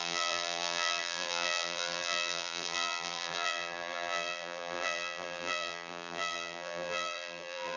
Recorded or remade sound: remade